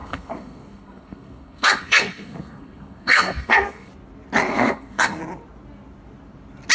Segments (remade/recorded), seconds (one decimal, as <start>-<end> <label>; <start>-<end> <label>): 0.0-3.9 remade; 3.9-4.5 recorded; 4.5-5.2 remade; 5.2-6.7 recorded